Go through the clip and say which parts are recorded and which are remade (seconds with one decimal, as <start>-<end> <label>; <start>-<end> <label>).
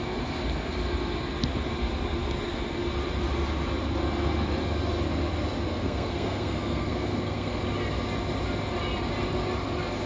0.0-5.7 recorded; 5.7-7.6 remade; 7.6-10.1 recorded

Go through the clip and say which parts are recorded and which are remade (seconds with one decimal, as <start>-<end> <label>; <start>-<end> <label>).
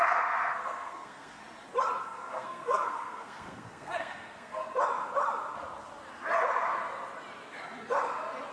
0.0-1.4 remade; 1.4-2.0 recorded; 2.0-4.6 remade; 4.6-8.5 recorded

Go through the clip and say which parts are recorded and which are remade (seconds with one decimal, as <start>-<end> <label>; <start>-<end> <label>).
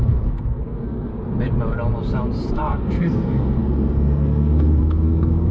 0.0-1.1 remade; 1.1-2.5 recorded; 2.5-5.5 remade